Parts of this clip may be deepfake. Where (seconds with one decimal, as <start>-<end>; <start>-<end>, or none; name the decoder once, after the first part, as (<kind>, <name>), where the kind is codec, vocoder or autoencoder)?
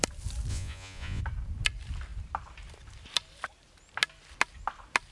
0.5-1.2 (vocoder, Vocos)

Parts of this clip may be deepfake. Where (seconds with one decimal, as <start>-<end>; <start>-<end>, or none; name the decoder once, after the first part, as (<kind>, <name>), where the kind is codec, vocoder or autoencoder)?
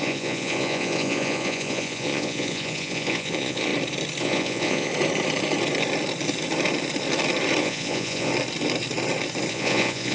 0.0-3.7 (vocoder, Vocos); 4.2-4.9; 7.6-8.3; 9.5-10.1